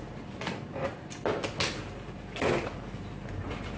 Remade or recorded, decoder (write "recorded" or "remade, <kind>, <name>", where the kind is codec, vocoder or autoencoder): recorded